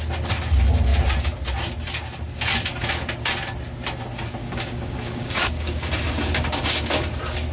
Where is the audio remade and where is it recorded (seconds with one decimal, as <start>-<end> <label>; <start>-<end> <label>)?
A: 0.0-4.4 recorded; 4.4-5.9 remade; 5.9-7.5 recorded